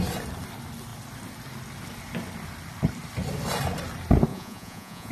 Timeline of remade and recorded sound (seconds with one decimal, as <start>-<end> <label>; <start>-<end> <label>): 0.0-4.3 recorded; 4.3-5.1 remade